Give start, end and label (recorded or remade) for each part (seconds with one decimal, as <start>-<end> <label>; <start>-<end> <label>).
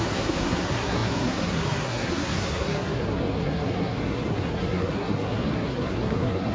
0.0-6.5 remade